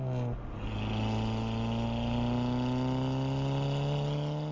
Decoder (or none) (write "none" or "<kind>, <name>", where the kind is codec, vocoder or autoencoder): none